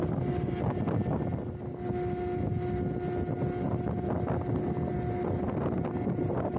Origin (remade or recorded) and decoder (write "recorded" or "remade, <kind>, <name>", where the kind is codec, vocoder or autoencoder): recorded